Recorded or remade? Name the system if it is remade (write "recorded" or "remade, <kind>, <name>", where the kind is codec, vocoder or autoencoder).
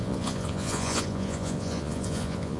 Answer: remade, vocoder, Vocos